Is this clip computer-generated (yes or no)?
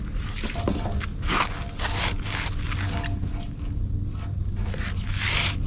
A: no